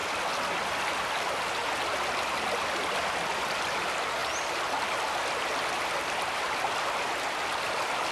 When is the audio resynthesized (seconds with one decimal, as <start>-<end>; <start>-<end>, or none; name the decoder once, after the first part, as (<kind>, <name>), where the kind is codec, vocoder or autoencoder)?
0.9-1.6 (vocoder, BigVGAN v2); 2.5-4.2; 5.7-8.1